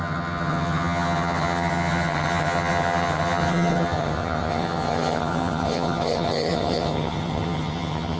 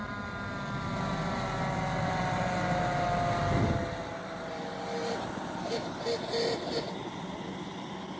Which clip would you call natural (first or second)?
second